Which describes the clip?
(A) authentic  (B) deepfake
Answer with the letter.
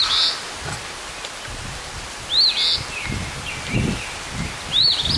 A